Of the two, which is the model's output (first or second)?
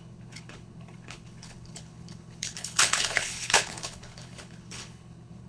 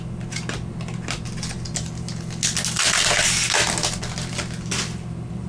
first